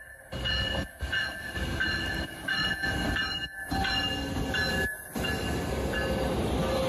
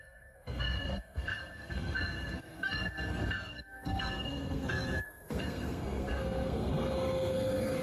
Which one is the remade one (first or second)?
second